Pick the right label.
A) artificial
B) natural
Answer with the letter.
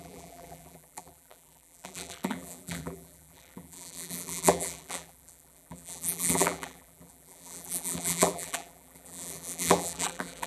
A